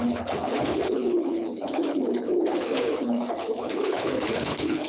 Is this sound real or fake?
fake